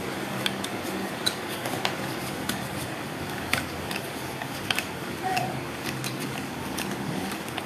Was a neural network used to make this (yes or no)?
yes